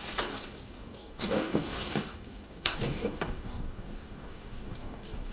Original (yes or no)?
no